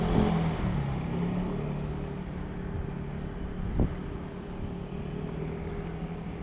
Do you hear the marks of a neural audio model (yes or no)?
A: no